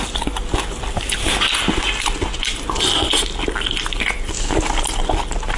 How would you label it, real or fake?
real